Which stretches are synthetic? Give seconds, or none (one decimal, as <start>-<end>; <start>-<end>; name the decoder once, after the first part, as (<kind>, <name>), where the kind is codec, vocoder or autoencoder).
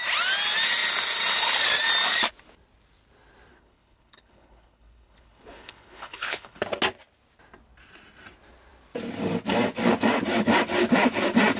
3.5-6.6 (codec, HILCodec)